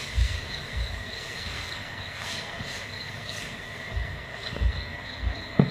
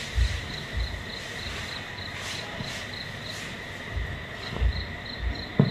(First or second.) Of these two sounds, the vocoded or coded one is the first